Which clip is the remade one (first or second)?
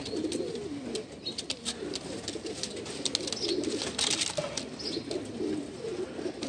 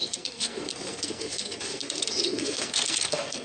second